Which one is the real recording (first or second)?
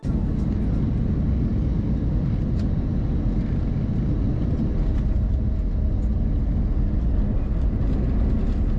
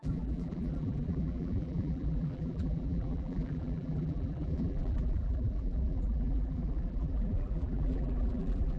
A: first